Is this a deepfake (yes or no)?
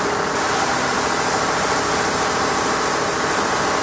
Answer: no